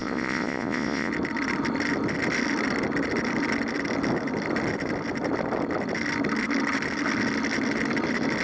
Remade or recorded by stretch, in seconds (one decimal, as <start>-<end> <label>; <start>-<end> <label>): 0.0-1.1 remade; 1.1-8.4 recorded